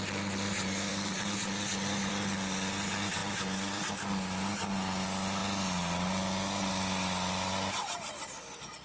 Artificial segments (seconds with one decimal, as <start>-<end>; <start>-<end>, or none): 0.9-2.1; 3.2-3.9